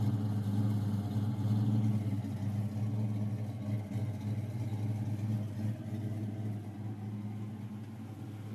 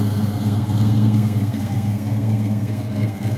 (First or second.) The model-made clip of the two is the second